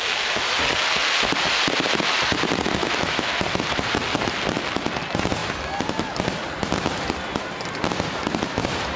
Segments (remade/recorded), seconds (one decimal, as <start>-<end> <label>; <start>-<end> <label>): 0.0-2.8 recorded; 2.8-3.3 remade; 3.3-9.0 recorded

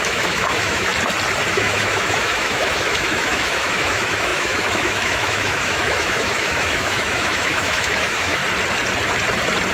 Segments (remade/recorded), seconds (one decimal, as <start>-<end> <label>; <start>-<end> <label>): 0.0-0.9 remade; 0.9-1.5 recorded; 1.5-8.4 remade; 8.4-9.7 recorded

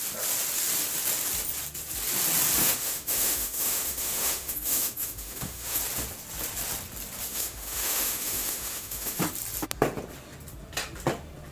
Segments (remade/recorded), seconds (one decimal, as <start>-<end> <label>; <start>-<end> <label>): 0.0-2.6 recorded; 2.6-5.8 remade; 5.8-7.3 recorded; 7.3-9.2 remade; 9.2-11.5 recorded

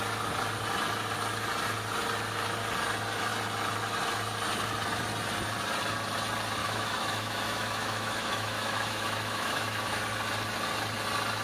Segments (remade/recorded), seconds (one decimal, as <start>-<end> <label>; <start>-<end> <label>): 0.0-6.6 recorded; 6.6-10.0 remade; 10.0-11.4 recorded

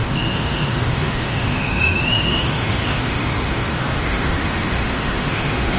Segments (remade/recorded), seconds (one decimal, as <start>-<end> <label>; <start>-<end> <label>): 0.0-5.8 remade

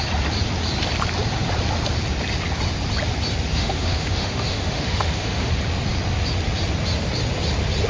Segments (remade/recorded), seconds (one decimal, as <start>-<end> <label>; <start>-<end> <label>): 0.0-3.5 recorded; 3.5-5.5 remade; 5.5-7.9 recorded